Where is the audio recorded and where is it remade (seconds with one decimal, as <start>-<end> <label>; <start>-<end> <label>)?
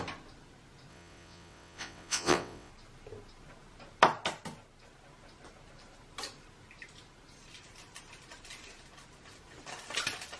0.0-0.9 recorded; 0.9-2.7 remade; 2.7-10.4 recorded